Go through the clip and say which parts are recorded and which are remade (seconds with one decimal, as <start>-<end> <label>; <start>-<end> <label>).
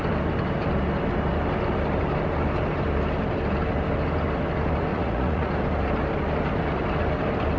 0.0-4.9 recorded; 4.9-5.5 remade; 5.5-7.6 recorded